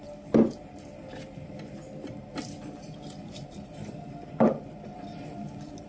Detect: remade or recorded remade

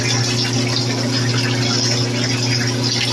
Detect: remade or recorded recorded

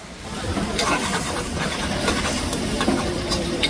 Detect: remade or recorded remade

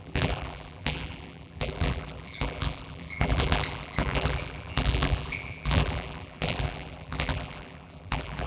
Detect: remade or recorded remade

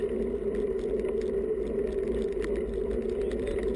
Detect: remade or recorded recorded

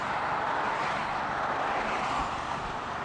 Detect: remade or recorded recorded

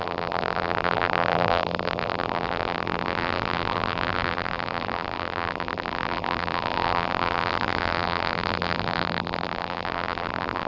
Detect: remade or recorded remade